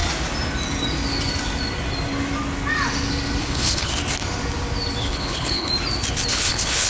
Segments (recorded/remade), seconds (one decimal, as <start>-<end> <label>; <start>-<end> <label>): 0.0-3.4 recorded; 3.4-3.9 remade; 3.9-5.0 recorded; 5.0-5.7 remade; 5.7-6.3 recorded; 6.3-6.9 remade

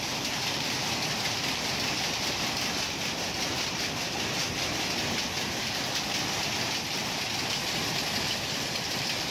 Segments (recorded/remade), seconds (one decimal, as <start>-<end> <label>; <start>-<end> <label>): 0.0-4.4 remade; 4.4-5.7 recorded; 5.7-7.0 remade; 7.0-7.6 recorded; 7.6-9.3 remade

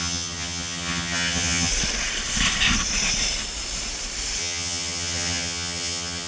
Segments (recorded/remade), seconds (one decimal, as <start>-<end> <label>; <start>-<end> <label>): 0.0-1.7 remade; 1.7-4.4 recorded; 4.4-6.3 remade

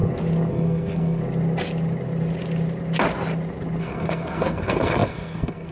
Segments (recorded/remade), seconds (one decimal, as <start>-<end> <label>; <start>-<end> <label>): 0.0-0.5 recorded; 0.5-1.2 remade; 1.2-3.8 recorded; 3.8-5.7 remade

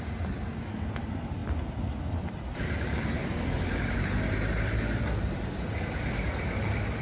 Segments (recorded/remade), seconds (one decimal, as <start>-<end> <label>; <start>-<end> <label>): 0.0-7.0 recorded